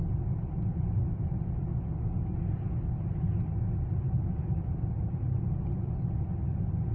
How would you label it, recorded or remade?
recorded